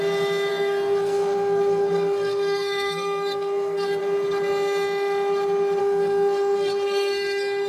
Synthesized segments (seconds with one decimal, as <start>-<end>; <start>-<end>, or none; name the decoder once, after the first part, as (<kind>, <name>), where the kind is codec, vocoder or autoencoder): 0.5-4.0 (codec, SNAC); 5.8-7.7